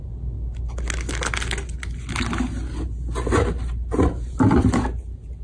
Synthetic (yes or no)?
no